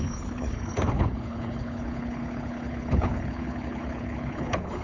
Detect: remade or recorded remade